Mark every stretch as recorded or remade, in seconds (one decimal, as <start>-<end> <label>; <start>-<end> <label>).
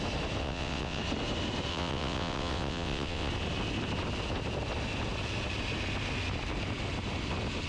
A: 0.0-0.4 recorded; 0.4-1.0 remade; 1.0-1.7 recorded; 1.7-3.3 remade; 3.3-7.7 recorded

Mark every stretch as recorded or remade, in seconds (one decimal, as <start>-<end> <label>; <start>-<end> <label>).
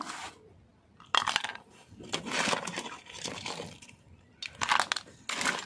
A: 0.0-5.7 recorded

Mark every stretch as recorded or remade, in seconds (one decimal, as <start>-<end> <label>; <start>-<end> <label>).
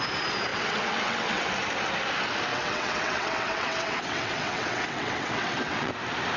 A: 0.0-0.5 recorded; 0.5-1.5 remade; 1.5-2.5 recorded; 2.5-5.9 remade; 5.9-6.4 recorded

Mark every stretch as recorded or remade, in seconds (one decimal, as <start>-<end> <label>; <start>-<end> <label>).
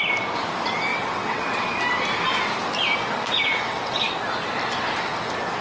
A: 0.0-0.9 recorded; 0.9-1.7 remade; 1.7-3.5 recorded; 3.5-4.2 remade; 4.2-5.6 recorded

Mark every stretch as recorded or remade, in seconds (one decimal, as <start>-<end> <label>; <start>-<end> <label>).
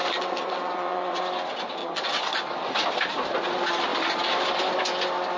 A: 0.0-1.2 remade; 1.2-1.8 recorded; 1.8-2.4 remade; 2.4-5.4 recorded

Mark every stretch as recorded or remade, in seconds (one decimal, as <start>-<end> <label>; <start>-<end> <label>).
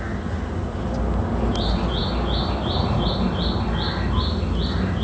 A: 0.0-5.0 recorded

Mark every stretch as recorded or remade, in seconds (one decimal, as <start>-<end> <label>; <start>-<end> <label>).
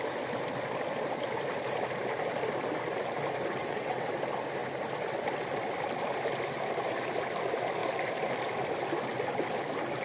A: 0.0-3.6 recorded; 3.6-4.1 remade; 4.1-10.0 recorded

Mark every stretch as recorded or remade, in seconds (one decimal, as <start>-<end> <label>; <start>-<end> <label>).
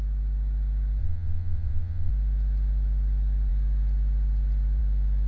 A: 0.0-1.0 recorded; 1.0-2.1 remade; 2.1-5.3 recorded